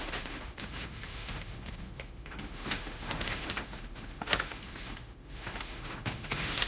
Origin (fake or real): fake